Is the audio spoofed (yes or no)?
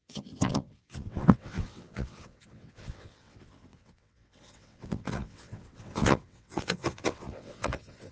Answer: yes